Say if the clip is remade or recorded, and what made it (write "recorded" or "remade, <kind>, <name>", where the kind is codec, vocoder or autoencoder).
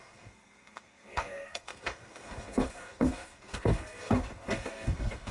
remade, codec, SNAC